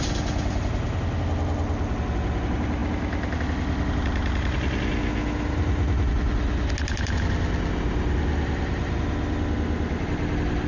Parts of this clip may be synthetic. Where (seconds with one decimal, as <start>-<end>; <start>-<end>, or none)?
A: none